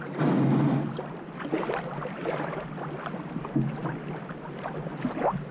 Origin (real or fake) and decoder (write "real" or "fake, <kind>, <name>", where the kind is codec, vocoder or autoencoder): real